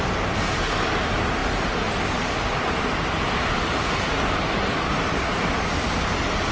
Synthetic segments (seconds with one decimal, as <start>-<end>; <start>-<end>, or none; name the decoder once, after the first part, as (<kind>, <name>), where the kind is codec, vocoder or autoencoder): none